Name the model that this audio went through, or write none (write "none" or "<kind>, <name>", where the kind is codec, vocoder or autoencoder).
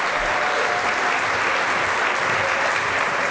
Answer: none